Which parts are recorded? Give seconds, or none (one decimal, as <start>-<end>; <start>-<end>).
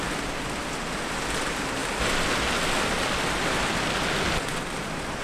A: 0.0-5.2